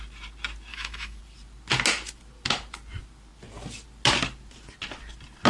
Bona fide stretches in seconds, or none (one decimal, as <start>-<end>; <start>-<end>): 0.0-0.7; 1.2-5.5